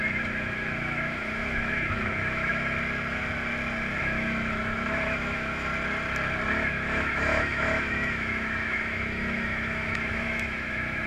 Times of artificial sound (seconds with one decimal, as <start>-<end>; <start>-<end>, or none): 0.0-2.5; 4.0-5.7; 6.7-11.1